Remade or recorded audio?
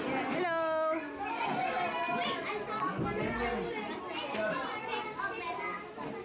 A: recorded